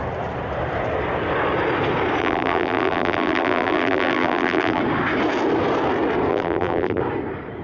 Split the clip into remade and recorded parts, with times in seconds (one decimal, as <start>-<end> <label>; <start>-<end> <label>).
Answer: 0.0-2.2 recorded; 2.2-4.8 remade; 4.8-6.3 recorded; 6.3-7.0 remade; 7.0-7.6 recorded